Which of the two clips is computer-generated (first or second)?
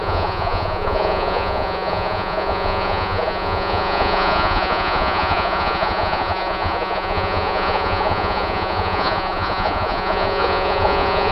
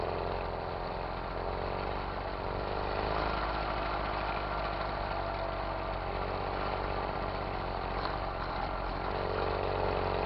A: first